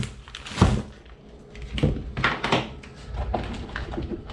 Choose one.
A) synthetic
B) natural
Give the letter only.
B